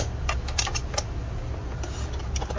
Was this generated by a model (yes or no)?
no